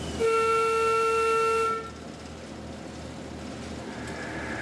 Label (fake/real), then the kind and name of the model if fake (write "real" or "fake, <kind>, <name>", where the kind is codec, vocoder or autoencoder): real